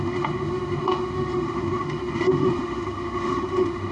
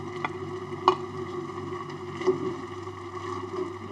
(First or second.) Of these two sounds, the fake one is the first